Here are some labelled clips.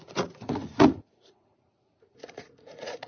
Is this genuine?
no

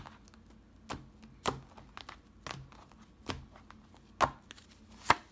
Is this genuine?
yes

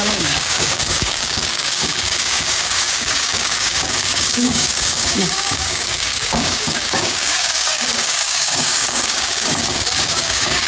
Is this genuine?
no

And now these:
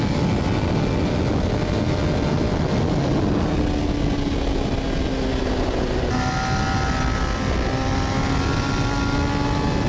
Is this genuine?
yes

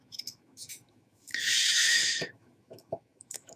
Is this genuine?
no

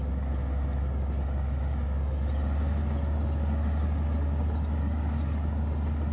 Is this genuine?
yes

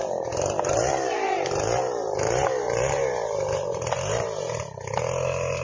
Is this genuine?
no